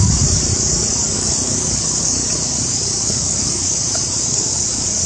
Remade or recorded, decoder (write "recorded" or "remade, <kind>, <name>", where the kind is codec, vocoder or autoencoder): remade, codec, DAC